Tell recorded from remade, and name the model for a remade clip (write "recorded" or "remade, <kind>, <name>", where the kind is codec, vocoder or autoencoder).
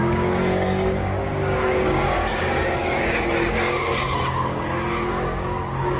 remade, codec, DAC